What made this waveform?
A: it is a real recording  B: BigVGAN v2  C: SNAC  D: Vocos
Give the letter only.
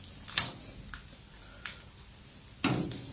A